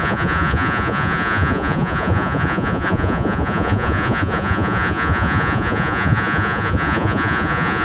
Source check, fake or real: fake